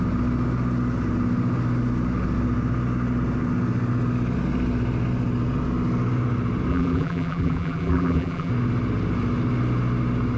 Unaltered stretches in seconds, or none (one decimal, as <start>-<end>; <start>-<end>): 0.0-6.7; 8.5-10.4